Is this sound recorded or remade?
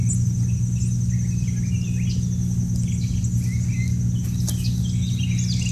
recorded